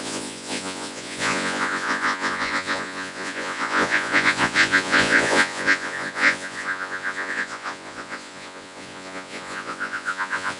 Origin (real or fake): fake